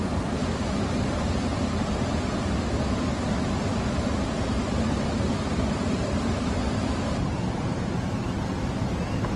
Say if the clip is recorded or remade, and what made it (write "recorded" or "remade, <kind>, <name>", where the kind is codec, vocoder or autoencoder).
recorded